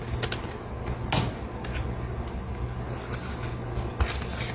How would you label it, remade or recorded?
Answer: recorded